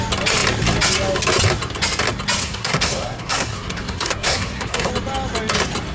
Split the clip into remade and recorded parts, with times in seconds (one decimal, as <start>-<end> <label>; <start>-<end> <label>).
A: 0.0-2.4 recorded; 2.4-4.9 remade; 4.9-5.9 recorded